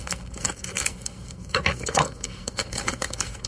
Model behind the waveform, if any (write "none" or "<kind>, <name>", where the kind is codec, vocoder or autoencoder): codec, SNAC